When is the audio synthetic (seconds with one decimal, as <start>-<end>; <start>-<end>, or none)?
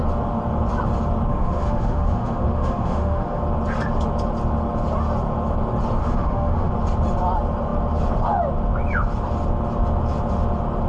1.3-3.4; 6.0-6.7